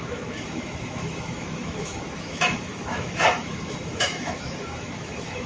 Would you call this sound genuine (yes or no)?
no